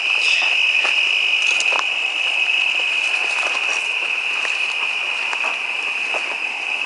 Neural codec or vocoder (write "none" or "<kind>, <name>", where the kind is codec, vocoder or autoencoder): none